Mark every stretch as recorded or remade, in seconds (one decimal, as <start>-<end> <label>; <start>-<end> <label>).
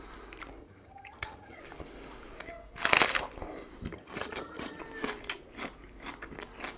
0.0-0.6 recorded; 0.6-1.6 remade; 1.6-3.9 recorded; 3.9-4.8 remade; 4.8-6.8 recorded